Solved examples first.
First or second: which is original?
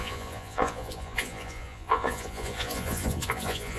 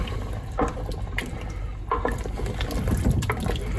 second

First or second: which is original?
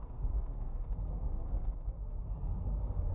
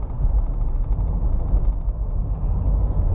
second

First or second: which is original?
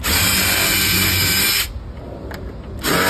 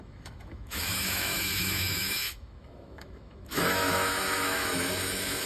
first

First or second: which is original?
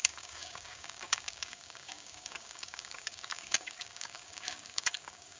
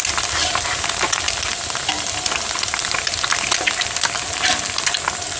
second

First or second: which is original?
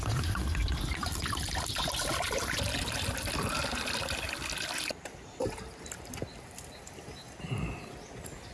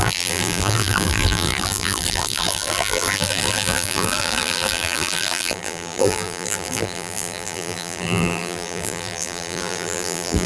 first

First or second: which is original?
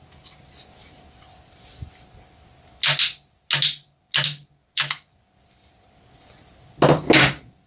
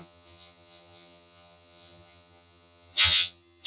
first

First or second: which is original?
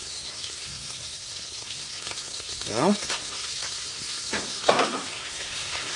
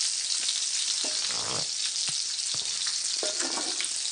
second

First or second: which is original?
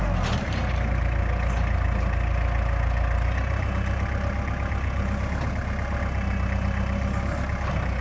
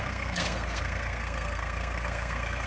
first